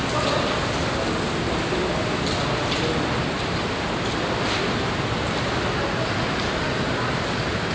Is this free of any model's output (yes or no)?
yes